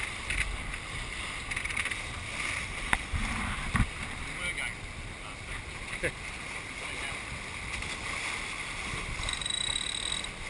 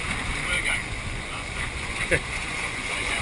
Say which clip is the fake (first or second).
second